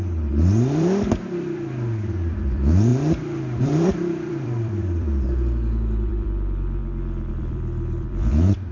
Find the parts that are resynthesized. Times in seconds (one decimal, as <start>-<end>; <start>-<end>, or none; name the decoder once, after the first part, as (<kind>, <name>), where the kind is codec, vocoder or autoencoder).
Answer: 0.0-2.9 (vocoder, BigVGAN v2); 3.6-6.8; 7.3-8.7